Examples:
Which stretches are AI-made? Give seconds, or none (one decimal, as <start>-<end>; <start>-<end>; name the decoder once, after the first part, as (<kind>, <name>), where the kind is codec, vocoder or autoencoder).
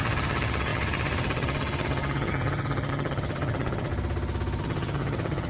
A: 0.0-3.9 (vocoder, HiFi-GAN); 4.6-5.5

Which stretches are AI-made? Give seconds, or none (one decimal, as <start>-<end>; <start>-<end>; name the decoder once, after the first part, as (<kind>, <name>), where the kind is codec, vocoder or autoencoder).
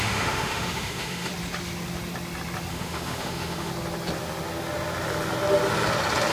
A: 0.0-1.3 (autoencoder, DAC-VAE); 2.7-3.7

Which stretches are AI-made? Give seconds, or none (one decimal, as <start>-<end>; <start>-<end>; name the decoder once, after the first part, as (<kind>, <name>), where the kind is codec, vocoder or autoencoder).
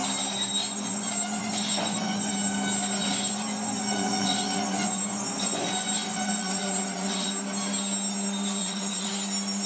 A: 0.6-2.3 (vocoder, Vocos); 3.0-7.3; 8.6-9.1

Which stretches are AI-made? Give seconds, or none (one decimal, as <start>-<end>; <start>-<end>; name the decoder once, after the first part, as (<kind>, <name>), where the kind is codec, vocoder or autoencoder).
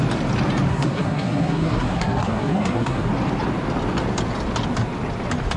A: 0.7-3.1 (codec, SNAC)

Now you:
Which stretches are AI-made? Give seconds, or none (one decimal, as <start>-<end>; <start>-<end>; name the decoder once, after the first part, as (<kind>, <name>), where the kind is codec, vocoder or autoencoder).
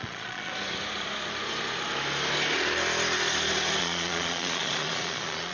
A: 0.0-0.5 (vocoder, Vocos); 3.8-5.5